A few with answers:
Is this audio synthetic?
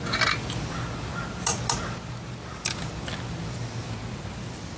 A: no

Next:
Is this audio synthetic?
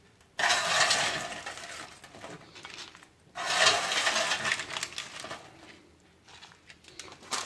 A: no